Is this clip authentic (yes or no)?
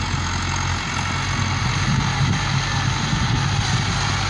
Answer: yes